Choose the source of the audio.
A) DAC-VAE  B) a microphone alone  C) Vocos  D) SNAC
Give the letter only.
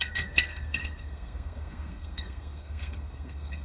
D